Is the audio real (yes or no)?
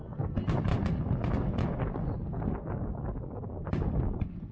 yes